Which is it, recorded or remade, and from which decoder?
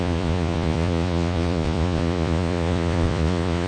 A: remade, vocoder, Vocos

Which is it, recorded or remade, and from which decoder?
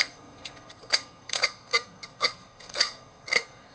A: remade, codec, SNAC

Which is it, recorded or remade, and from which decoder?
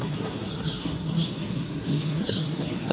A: remade, codec, SNAC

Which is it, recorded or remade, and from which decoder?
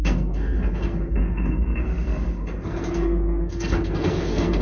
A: remade, codec, SNAC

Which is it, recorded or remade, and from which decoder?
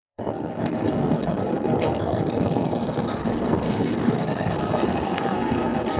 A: remade, codec, SNAC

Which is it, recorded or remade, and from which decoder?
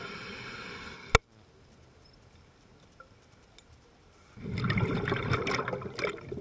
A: recorded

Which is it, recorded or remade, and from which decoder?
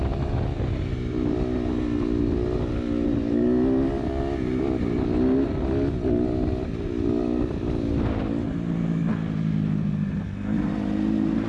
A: recorded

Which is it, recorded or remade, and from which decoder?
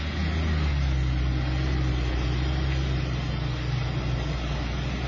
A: recorded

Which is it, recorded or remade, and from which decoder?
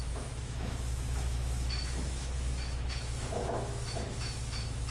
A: remade, autoencoder, DAC-VAE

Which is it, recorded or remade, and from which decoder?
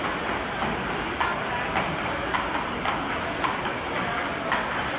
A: recorded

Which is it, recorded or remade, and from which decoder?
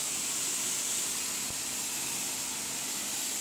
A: recorded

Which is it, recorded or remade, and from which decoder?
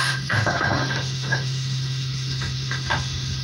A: remade, autoencoder, DAC-VAE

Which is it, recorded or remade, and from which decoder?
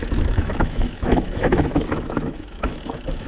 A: remade, autoencoder, DAC-VAE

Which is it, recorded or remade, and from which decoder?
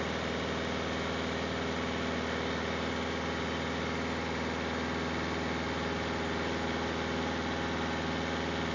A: recorded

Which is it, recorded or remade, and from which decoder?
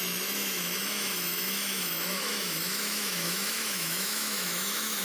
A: remade, autoencoder, DAC-VAE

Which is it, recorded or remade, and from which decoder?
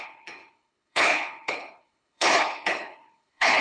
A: remade, codec, HILCodec